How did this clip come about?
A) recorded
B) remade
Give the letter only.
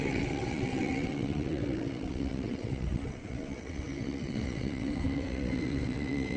B